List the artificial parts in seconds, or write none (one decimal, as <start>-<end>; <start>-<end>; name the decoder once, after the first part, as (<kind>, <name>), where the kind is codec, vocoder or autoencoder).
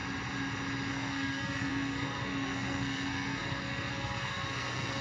0.9-5.0 (codec, SNAC)